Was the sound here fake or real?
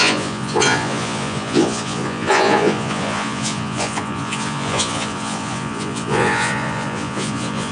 fake